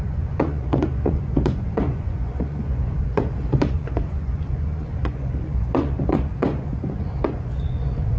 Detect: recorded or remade remade